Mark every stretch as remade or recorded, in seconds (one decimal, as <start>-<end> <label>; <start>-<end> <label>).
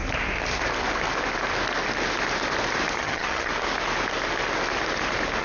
0.0-3.0 recorded; 3.0-3.5 remade; 3.5-5.4 recorded